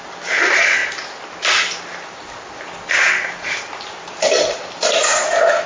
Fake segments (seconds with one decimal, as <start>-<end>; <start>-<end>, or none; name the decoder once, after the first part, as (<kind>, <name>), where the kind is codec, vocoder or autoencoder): none

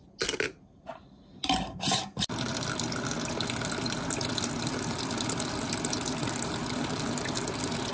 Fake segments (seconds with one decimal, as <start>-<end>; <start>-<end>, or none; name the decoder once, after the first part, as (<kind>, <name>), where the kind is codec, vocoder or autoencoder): none

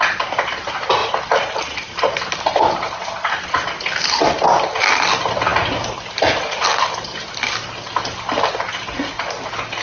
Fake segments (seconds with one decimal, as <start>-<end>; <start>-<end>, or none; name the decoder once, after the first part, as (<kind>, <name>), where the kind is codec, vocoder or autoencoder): none